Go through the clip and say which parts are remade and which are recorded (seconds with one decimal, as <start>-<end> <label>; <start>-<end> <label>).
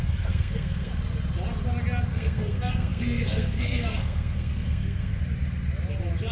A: 0.0-0.9 remade; 0.9-2.1 recorded; 2.1-5.1 remade; 5.1-6.3 recorded